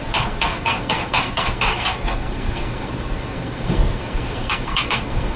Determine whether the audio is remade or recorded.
remade